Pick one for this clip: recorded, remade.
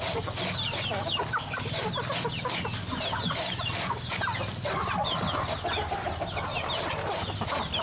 recorded